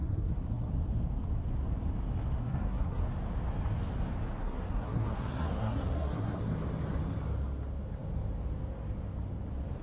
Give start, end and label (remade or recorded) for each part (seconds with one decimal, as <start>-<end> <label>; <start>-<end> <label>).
0.0-0.7 remade; 0.7-2.4 recorded; 2.4-3.0 remade; 3.0-4.4 recorded; 4.4-6.4 remade; 6.4-9.8 recorded